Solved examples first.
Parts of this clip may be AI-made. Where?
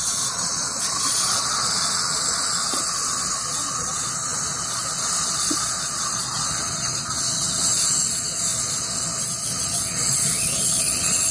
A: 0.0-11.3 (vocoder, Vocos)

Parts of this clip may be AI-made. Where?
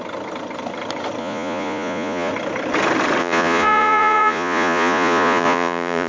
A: 1.2-2.3 (vocoder, Vocos); 3.2-6.1